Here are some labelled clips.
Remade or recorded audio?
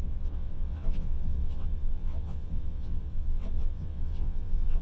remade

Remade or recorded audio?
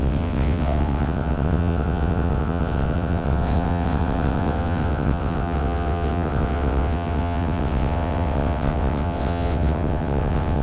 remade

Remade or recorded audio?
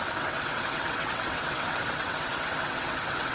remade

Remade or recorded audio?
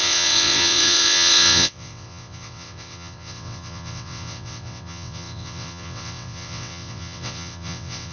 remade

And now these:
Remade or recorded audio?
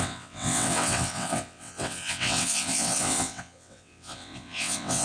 remade